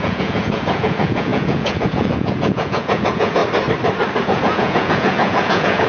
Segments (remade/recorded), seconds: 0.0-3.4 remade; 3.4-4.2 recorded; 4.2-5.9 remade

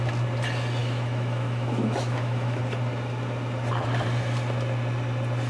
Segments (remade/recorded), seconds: 0.0-0.8 recorded; 0.8-2.6 remade; 2.6-5.5 recorded

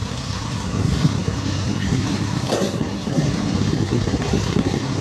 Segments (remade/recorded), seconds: 0.0-5.0 remade

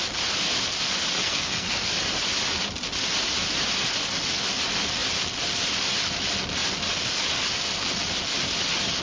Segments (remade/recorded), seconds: 0.0-1.2 recorded; 1.2-1.9 remade; 1.9-9.0 recorded

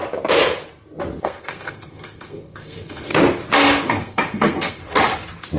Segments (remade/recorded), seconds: 0.0-1.2 recorded; 1.2-3.1 remade; 3.1-3.9 recorded; 3.9-4.8 remade; 4.8-5.6 recorded

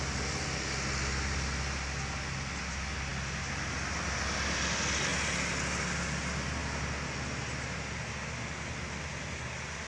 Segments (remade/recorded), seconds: 0.0-9.9 recorded

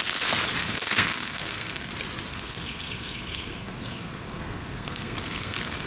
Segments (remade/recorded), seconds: 0.0-0.6 recorded; 0.6-1.9 remade; 1.9-2.3 recorded; 2.3-5.9 remade